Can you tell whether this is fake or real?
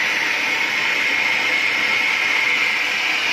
real